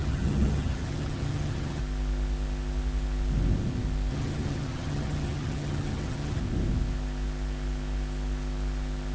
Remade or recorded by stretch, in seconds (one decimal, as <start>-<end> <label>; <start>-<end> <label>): 0.0-1.8 remade; 1.8-4.1 recorded; 4.1-6.4 remade; 6.4-9.1 recorded